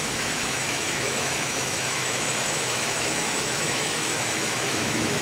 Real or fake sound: fake